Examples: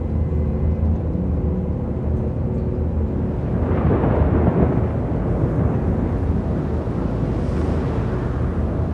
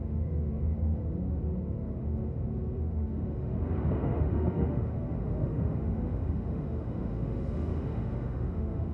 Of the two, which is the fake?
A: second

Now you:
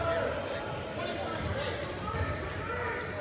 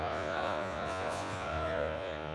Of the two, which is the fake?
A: second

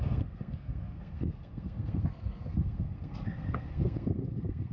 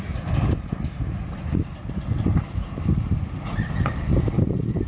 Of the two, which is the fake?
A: first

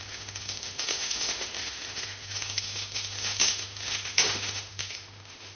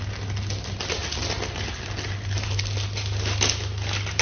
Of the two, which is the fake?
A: first